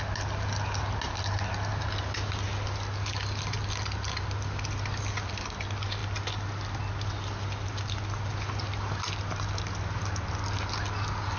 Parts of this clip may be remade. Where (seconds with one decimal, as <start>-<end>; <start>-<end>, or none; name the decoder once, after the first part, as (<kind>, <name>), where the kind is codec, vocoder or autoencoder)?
none